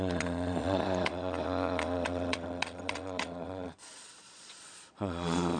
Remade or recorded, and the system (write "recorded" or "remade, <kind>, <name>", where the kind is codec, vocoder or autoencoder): remade, vocoder, Vocos